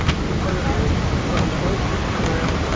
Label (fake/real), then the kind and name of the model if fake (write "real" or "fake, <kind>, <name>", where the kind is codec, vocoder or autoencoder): real